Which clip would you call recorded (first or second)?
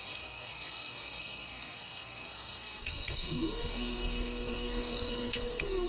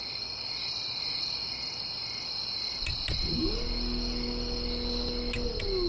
second